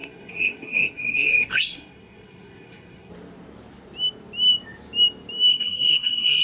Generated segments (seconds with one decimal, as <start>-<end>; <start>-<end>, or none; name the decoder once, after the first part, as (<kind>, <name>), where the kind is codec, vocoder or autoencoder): 0.0-3.1 (codec, SNAC); 5.5-6.4

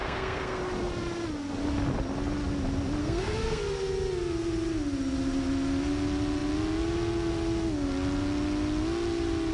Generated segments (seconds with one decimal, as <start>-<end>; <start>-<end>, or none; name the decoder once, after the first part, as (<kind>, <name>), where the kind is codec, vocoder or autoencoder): 0.0-0.6 (codec, SNAC); 3.0-3.6

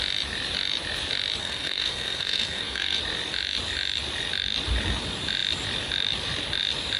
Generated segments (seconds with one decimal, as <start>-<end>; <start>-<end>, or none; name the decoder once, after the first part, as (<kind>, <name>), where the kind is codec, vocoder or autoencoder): 1.4-3.0 (codec, SNAC)